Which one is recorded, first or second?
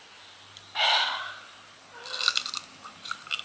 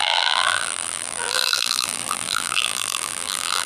first